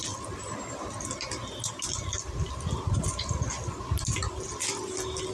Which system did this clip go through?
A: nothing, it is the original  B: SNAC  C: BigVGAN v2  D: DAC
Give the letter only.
A